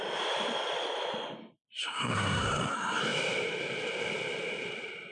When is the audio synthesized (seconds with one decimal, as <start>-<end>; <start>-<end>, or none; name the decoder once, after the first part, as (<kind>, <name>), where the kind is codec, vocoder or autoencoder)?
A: 1.8-3.0 (codec, SNAC)